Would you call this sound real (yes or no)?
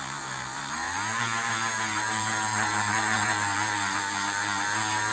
no